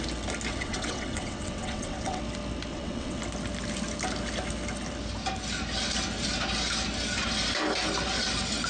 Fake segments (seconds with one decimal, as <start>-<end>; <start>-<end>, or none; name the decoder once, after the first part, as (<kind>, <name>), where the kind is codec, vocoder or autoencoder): 0.5-2.2 (vocoder, WaveNeXt); 2.7-3.2